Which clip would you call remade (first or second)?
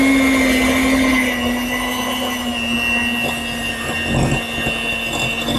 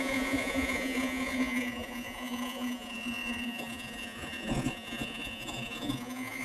second